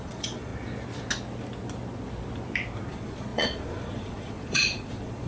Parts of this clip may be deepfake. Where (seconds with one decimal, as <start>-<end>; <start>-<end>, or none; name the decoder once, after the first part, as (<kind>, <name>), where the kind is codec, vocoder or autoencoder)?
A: 0.0-0.5 (vocoder, Vocos); 2.9-5.3